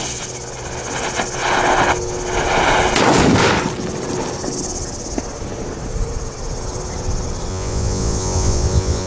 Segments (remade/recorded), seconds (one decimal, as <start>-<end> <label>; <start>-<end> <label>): 0.0-7.5 recorded; 7.5-9.1 remade